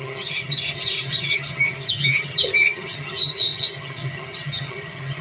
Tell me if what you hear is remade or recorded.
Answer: remade